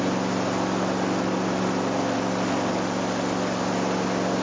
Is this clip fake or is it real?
real